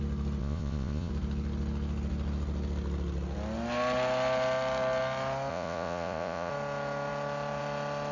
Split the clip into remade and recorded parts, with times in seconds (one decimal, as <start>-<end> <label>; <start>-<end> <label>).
0.0-0.4 recorded; 0.4-1.1 remade; 1.1-5.5 recorded; 5.5-6.5 remade; 6.5-8.1 recorded